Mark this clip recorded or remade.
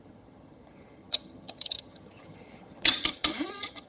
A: remade